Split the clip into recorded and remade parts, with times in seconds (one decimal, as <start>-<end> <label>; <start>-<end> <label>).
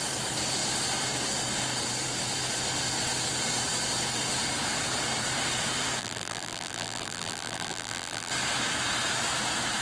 0.0-6.0 recorded; 6.0-8.3 remade; 8.3-9.8 recorded